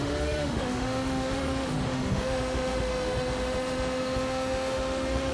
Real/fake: fake